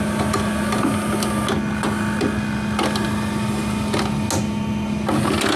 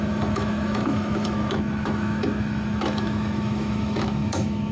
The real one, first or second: first